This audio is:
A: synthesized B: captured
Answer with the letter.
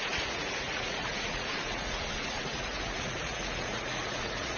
A